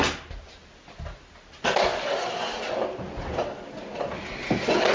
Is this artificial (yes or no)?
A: no